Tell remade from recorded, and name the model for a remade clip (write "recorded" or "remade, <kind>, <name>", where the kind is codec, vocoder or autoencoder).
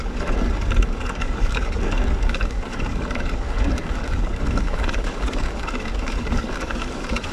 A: remade, codec, DAC